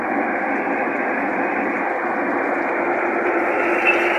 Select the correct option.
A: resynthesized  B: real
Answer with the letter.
B